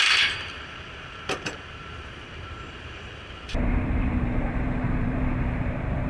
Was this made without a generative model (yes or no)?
no